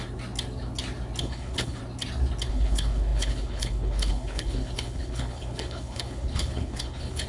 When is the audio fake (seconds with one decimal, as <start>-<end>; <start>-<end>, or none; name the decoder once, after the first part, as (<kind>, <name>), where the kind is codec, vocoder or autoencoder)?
1.2-1.8 (codec, HILCodec); 2.5-7.3